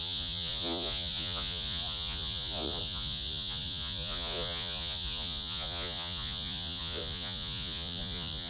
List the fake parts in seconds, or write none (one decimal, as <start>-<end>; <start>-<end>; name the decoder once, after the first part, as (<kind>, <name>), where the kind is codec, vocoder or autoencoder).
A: 0.0-8.5 (vocoder, Vocos)